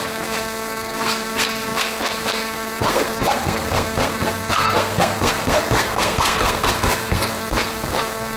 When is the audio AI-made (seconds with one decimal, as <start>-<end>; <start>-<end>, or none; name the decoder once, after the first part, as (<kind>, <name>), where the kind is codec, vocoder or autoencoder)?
0.0-8.4 (codec, SNAC)

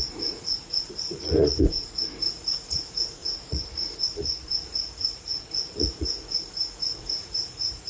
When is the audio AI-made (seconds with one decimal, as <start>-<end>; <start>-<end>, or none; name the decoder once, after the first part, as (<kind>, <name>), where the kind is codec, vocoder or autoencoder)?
0.0-7.9 (vocoder, Vocos)

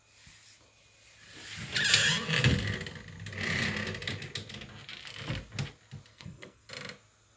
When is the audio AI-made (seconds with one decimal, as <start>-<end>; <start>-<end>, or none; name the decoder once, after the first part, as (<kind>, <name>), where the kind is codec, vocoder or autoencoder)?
6.1-6.7 (codec, SNAC)

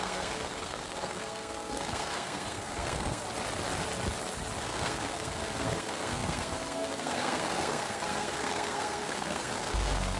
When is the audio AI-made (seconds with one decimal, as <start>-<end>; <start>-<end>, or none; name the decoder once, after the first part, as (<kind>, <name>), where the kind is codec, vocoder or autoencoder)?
0.0-3.2 (codec, SNAC); 4.6-10.2

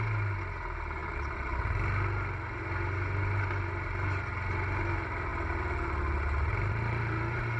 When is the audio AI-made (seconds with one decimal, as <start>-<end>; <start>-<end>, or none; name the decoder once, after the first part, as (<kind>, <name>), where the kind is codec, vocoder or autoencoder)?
none

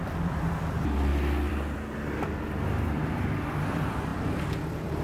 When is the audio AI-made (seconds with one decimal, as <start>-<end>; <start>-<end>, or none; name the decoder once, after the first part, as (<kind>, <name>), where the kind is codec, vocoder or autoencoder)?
0.0-5.0 (vocoder, BigVGAN v2)

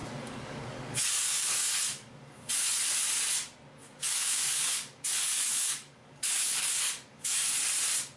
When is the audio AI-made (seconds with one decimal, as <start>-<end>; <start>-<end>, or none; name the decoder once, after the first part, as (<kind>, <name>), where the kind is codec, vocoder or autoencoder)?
0.0-2.5 (codec, DAC); 3.8-7.5